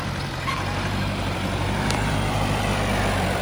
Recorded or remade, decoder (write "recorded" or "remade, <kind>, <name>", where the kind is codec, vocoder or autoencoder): remade, vocoder, BigVGAN v2